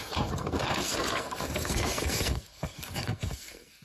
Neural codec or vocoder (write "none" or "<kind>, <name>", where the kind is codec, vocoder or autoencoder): codec, SNAC